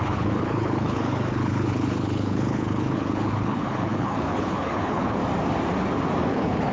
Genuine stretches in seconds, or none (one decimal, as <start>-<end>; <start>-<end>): 5.2-6.3